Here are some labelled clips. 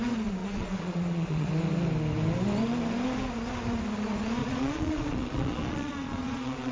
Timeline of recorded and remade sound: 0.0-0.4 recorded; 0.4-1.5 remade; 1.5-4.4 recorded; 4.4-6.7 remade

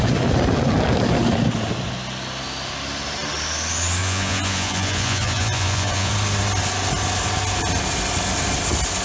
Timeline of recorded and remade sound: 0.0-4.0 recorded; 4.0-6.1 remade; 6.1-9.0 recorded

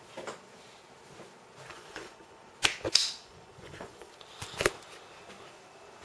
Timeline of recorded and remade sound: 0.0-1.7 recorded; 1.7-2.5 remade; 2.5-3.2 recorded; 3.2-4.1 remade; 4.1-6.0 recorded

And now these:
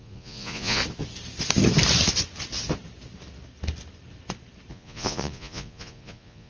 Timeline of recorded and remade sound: 0.0-0.8 remade; 0.8-4.7 recorded; 4.7-6.5 remade